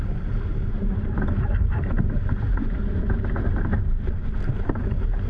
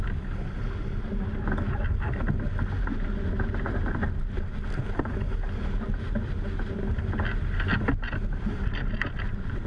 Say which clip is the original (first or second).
second